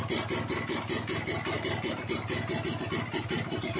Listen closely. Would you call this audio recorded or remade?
recorded